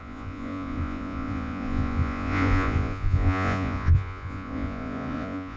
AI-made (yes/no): yes